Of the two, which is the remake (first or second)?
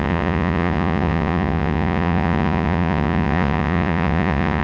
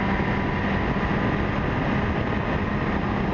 first